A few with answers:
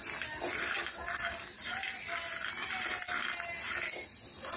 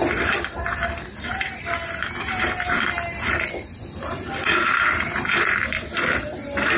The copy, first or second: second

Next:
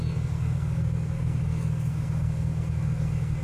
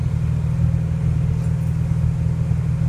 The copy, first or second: first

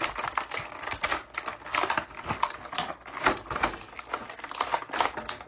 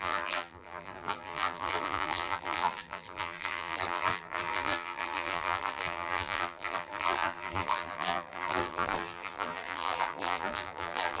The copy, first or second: second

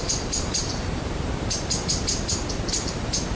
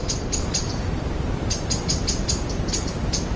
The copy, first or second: first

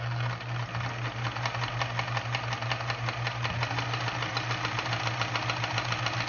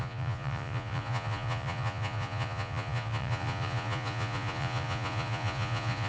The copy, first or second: second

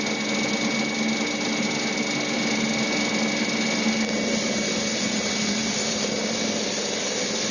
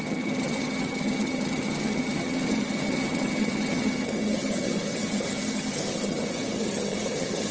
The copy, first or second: second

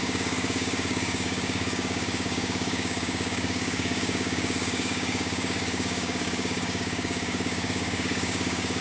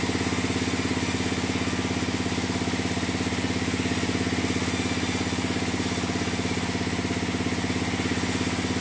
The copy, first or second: first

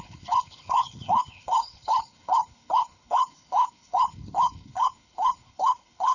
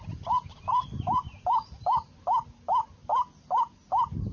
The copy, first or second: first